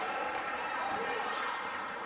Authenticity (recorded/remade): remade